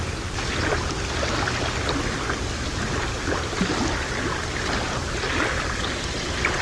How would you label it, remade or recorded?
recorded